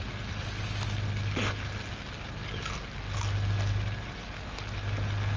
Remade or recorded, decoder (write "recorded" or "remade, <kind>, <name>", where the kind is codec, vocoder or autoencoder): recorded